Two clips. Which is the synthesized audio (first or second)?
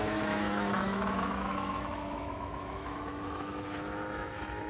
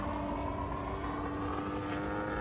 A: first